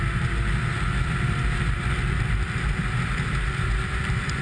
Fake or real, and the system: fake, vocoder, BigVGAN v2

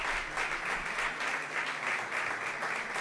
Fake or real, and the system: real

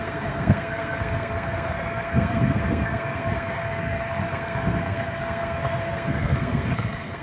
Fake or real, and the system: fake, codec, SNAC